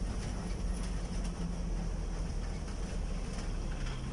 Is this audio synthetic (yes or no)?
no